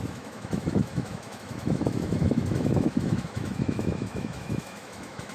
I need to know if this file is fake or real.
fake